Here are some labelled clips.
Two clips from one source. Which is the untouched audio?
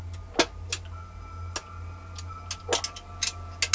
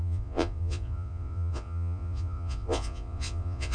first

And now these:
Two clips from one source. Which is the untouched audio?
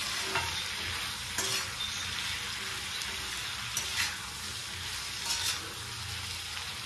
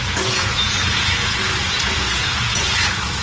first